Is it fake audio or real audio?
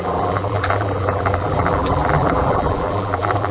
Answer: fake